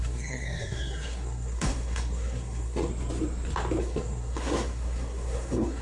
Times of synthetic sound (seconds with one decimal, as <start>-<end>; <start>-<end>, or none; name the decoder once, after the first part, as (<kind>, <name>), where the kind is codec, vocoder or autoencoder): 0.0-2.9 (codec, SNAC); 3.8-5.8